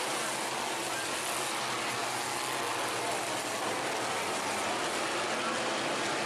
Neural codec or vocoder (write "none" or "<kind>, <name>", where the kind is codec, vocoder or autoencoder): none